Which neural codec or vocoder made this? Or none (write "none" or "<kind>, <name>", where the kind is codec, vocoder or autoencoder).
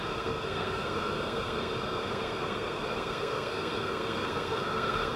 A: codec, SNAC